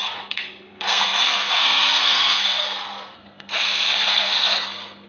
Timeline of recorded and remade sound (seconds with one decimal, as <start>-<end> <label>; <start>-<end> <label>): 0.0-5.1 remade